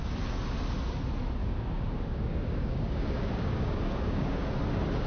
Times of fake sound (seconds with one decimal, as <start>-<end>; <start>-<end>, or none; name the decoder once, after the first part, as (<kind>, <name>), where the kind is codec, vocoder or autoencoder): 1.4-4.5 (codec, DAC)

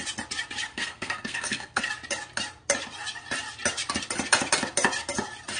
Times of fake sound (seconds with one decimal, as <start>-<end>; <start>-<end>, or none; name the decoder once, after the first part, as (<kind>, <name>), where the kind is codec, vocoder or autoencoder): 0.7-1.8 (codec, SNAC)

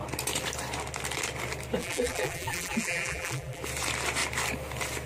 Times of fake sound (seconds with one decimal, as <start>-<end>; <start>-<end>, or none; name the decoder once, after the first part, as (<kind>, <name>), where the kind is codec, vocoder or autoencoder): 1.8-3.6 (vocoder, BigVGAN v2)

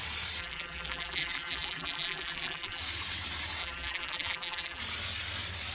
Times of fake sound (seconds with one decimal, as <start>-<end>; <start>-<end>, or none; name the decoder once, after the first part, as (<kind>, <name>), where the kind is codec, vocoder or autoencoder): 0.4-2.8 (vocoder, BigVGAN v2); 3.6-4.8

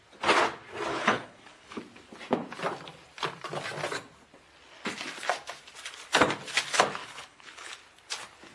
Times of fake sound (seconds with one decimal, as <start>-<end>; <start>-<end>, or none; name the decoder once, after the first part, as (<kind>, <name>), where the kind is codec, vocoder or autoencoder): 0.9-1.8 (codec, HILCodec); 7.0-7.7

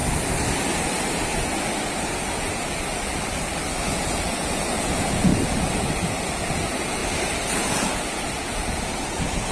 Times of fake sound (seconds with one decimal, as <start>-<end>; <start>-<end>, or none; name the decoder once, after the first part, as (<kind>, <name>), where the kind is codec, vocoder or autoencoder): 3.8-5.3 (vocoder, Vocos); 6.5-7.0; 7.5-9.5